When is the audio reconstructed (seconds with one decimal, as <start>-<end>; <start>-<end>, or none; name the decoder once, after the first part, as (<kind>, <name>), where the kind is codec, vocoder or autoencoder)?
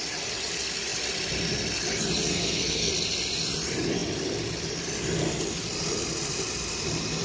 2.3-2.9 (codec, SNAC)